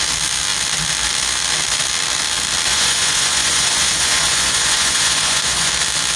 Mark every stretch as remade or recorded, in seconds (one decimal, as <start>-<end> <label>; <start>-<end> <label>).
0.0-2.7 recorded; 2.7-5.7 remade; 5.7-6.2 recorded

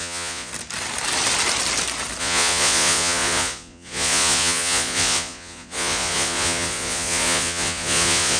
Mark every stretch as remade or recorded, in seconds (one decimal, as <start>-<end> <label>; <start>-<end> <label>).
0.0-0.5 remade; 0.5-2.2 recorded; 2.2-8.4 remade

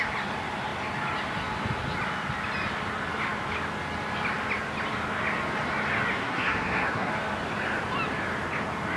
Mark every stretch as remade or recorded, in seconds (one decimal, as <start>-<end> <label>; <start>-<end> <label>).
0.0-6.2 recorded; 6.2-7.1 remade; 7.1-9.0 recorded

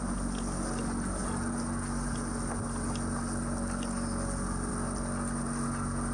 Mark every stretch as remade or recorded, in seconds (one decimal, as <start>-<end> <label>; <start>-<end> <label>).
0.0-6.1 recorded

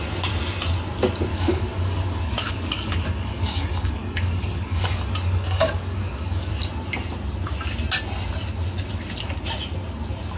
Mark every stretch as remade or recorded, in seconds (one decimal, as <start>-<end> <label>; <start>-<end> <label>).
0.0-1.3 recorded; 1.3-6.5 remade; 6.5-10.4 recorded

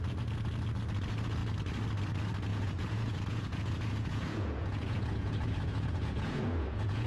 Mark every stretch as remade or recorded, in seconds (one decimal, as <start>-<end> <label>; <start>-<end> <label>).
0.0-2.5 recorded; 2.5-7.1 remade

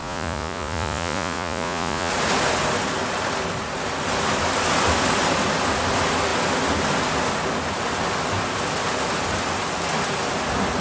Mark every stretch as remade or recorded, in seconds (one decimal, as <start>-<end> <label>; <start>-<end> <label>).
0.0-2.1 remade; 2.1-10.8 recorded

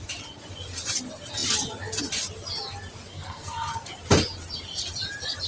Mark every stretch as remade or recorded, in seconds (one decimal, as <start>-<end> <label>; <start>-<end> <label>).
0.0-3.1 recorded; 3.1-3.9 remade; 3.9-5.5 recorded